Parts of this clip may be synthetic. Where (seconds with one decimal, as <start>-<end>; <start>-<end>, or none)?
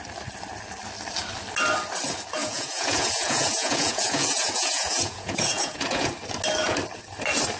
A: 2.4-6.1